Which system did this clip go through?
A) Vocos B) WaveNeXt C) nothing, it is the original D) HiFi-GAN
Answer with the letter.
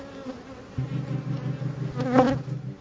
C